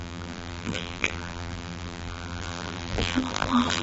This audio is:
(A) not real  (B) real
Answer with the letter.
A